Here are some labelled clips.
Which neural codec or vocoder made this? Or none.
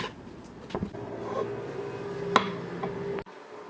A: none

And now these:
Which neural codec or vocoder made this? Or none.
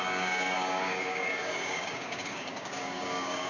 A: codec, DAC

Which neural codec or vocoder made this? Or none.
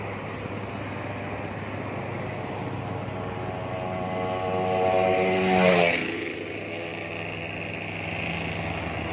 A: none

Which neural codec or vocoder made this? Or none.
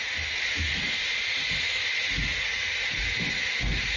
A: none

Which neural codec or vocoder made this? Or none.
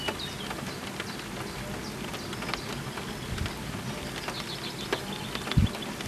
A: none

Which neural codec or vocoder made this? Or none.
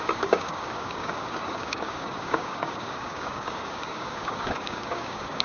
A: codec, DAC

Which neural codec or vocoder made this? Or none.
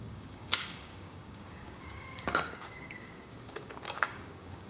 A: codec, DAC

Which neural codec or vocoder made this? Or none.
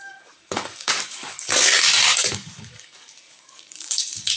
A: codec, DAC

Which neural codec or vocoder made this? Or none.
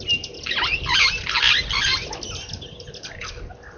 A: none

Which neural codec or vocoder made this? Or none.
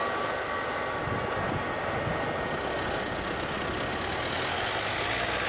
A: none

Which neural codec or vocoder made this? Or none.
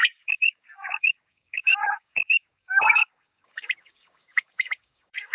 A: codec, DAC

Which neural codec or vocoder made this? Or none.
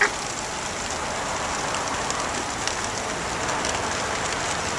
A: none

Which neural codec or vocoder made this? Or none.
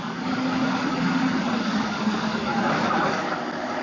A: codec, DAC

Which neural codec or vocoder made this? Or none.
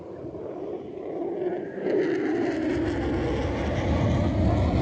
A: none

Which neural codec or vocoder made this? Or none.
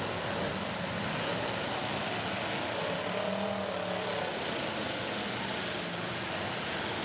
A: none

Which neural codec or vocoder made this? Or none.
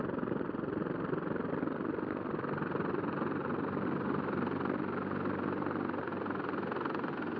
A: none